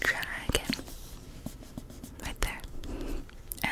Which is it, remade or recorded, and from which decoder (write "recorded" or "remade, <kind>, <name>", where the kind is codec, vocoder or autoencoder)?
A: remade, vocoder, BigVGAN v2